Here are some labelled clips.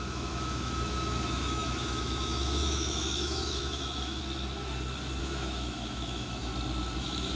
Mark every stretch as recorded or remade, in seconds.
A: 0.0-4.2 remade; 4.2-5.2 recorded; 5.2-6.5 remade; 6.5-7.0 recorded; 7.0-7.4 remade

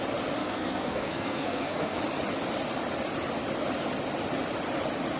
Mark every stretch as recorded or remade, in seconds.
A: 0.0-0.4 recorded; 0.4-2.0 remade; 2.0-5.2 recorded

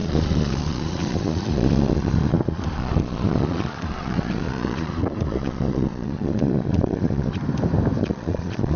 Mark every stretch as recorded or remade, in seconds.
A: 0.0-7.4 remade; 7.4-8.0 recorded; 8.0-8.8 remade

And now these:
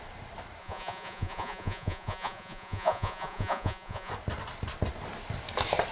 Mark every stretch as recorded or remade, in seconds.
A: 0.0-0.6 recorded; 0.6-4.1 remade; 4.1-5.9 recorded

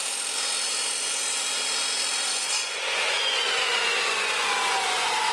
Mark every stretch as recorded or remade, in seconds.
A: 0.0-2.3 recorded; 2.3-5.3 remade